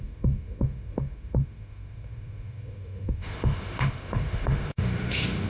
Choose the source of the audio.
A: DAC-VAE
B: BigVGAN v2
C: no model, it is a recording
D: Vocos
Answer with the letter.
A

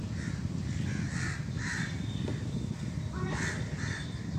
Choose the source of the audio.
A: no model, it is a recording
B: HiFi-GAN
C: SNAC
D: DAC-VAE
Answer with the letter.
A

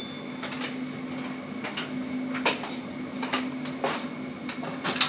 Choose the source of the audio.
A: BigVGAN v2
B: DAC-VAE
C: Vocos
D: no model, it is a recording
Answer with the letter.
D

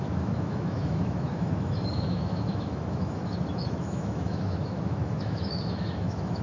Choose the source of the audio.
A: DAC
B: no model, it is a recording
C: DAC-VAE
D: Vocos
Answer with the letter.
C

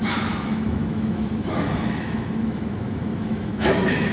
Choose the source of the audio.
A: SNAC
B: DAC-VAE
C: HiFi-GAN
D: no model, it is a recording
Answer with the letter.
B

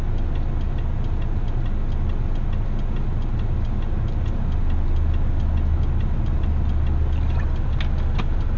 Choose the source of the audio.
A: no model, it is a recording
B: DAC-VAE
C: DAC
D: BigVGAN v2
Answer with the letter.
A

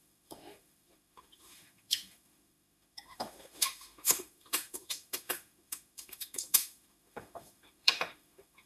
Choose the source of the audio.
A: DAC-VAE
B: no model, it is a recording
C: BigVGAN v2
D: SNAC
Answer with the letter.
A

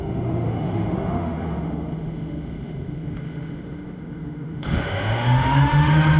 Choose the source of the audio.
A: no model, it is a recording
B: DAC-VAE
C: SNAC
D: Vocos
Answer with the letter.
B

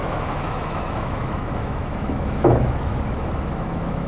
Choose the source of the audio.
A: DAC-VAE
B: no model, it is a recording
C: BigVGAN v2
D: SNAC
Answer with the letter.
A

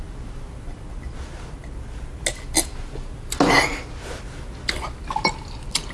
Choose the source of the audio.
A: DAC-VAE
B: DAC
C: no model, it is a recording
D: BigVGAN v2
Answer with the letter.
C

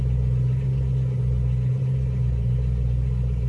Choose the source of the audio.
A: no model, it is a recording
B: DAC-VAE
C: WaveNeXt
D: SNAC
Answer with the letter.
A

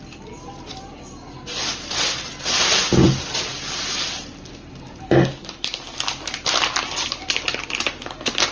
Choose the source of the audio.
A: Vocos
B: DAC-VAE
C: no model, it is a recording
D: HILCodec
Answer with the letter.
C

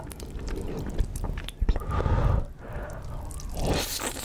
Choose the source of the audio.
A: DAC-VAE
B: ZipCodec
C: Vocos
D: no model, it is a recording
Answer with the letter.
D